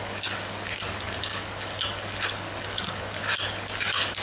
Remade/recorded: remade